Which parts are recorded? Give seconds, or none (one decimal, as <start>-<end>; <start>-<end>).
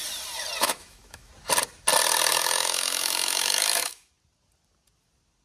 0.0-0.6; 1.3-2.3; 4.1-5.4